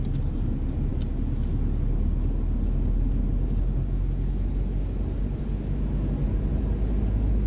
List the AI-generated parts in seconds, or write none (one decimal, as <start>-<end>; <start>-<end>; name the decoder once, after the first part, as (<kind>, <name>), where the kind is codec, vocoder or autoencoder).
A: none

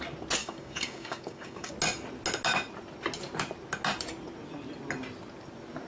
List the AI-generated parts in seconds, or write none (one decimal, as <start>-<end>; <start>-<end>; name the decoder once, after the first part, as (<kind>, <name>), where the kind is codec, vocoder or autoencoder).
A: 0.4-1.7 (codec, DAC)